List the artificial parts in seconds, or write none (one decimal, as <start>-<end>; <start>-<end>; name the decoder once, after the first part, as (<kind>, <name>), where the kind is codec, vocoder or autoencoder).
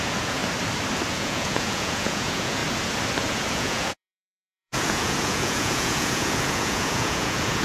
0.0-0.4 (vocoder, Vocos); 1.1-2.6; 3.2-7.6